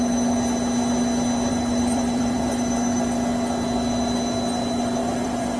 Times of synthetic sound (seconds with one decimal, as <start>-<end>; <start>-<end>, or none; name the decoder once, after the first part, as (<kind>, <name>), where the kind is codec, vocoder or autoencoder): 1.5-2.5 (vocoder, BigVGAN v2); 5.0-5.6